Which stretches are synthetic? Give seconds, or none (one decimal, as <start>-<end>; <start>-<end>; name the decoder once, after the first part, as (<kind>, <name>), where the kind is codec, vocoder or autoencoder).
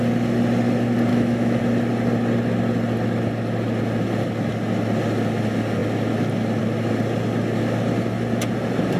1.1-1.6 (autoencoder, DAC-VAE)